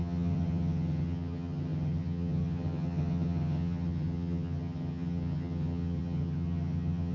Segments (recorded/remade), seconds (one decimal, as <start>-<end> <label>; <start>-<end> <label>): 0.0-7.1 remade